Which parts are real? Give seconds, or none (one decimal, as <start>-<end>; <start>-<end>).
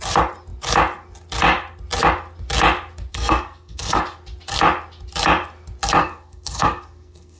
0.0-3.1; 4.0-6.0